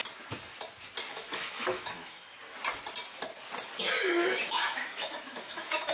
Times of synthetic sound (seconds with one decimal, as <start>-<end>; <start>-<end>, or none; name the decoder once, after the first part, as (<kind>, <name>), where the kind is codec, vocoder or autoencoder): 1.1-2.2 (autoencoder, DAC-VAE); 4.1-5.9